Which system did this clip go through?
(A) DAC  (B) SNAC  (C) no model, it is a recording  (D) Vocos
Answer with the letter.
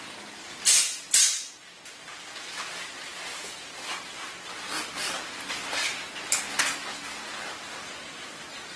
C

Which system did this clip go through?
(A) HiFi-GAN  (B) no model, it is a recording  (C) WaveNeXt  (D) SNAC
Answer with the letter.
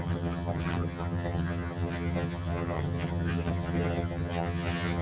A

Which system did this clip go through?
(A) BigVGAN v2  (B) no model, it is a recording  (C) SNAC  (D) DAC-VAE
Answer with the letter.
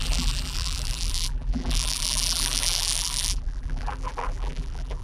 A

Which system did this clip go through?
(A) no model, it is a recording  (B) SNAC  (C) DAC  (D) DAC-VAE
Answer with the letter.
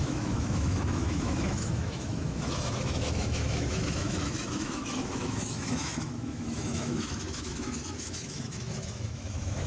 D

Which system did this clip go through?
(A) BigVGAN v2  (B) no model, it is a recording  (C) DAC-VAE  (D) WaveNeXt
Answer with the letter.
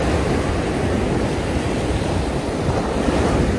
B